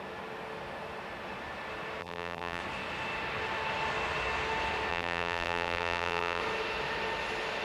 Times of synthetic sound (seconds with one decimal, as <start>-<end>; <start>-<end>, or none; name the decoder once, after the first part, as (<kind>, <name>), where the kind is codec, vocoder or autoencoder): 2.0-2.6 (vocoder, BigVGAN v2); 4.9-6.4